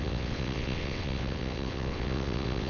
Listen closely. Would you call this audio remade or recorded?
remade